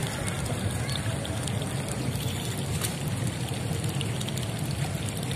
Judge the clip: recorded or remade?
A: recorded